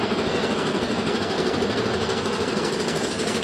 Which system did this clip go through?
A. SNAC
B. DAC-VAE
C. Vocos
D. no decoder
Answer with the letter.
A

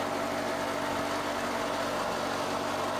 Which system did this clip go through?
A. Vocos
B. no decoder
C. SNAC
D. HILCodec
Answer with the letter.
B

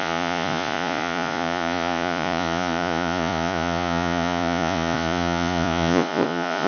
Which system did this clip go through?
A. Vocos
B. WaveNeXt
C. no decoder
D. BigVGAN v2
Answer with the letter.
A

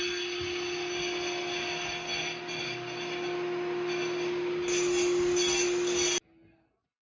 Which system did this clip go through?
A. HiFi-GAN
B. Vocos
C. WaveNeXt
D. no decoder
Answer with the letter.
D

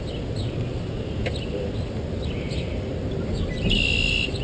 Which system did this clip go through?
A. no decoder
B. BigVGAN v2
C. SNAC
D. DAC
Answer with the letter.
A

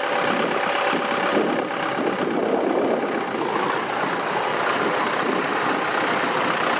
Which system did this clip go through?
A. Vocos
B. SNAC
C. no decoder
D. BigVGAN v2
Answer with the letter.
C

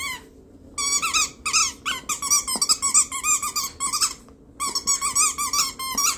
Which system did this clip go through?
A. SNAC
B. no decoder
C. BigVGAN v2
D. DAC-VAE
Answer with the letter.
B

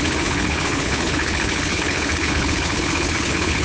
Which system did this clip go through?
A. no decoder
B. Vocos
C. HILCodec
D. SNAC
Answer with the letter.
C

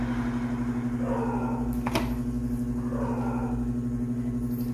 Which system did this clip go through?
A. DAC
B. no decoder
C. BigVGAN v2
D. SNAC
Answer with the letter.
B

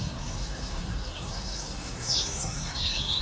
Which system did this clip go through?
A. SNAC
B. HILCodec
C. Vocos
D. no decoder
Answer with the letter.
A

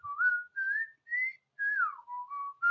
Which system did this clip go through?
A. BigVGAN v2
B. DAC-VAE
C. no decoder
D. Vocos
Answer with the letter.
C